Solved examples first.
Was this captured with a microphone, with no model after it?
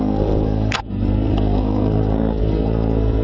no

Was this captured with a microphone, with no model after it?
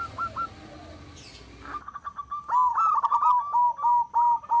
yes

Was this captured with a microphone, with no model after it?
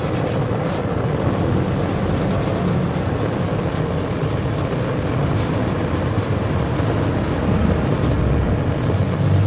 yes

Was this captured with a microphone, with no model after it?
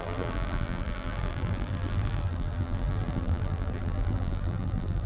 no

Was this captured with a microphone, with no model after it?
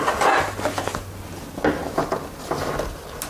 yes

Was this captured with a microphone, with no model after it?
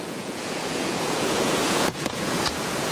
no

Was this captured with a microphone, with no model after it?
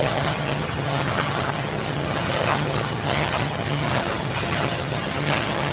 no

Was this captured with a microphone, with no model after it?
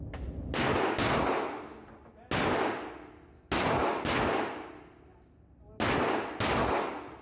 yes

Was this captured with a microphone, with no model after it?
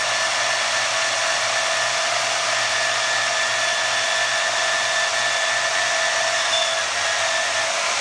yes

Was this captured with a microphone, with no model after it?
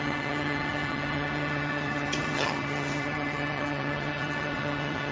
no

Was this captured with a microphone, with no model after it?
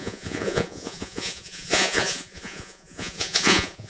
no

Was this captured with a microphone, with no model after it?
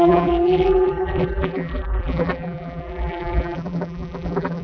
no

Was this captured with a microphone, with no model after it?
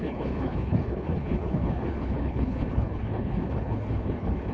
no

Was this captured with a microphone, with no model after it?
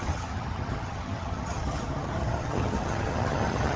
no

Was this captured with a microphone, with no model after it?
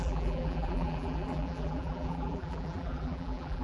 no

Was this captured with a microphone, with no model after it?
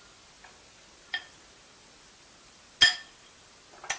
yes